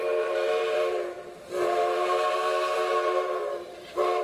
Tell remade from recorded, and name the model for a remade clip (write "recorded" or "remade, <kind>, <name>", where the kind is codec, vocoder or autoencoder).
remade, vocoder, BigVGAN v2